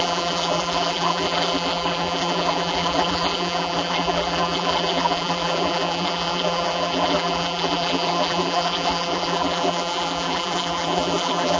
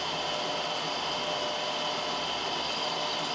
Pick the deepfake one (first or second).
first